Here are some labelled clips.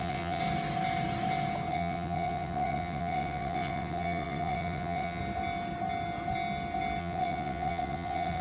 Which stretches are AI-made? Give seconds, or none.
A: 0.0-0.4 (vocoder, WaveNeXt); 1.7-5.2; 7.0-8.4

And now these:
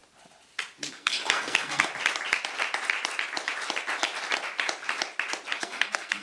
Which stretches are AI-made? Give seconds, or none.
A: 0.9-1.9 (codec, SNAC); 5.6-6.2

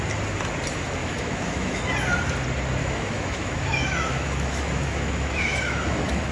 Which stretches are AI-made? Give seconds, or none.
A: 1.0-1.8 (autoencoder, DAC-VAE); 2.8-6.3

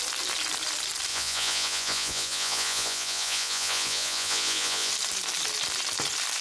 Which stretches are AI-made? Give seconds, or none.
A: 1.1-4.9 (vocoder, Vocos)

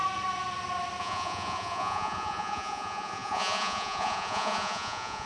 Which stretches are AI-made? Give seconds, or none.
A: 1.0-5.3 (vocoder, Vocos)